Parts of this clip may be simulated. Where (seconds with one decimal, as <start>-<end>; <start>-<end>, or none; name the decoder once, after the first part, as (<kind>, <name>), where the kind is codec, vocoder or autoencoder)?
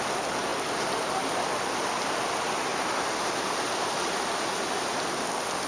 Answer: 2.7-5.2 (vocoder, BigVGAN v2)